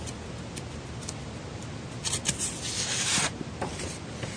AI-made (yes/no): no